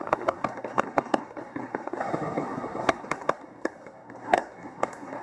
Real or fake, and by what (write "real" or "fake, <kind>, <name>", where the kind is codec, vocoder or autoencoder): fake, codec, SNAC